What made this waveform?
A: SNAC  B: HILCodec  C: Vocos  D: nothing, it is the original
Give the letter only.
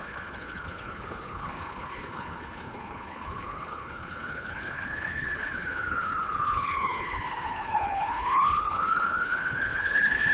B